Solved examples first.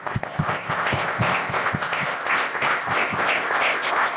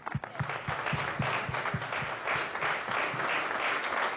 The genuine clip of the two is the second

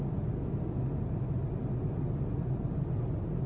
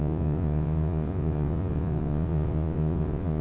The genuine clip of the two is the first